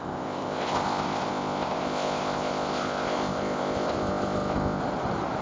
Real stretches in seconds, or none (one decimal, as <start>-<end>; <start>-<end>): 4.8-5.4